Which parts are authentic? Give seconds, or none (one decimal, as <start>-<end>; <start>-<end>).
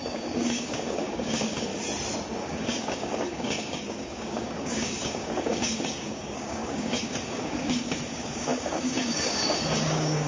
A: 1.7-2.4